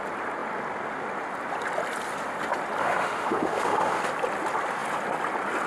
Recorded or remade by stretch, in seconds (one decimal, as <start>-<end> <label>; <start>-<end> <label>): 0.0-2.8 recorded; 2.8-4.0 remade; 4.0-5.7 recorded